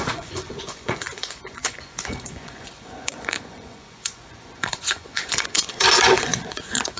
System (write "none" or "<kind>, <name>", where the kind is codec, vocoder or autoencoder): vocoder, Vocos